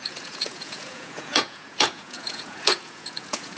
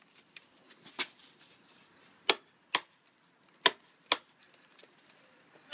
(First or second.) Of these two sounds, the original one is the second